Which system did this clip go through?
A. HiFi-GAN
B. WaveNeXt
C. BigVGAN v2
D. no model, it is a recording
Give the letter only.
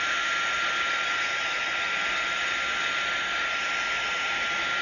D